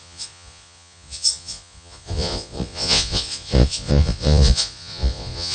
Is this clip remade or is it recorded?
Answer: remade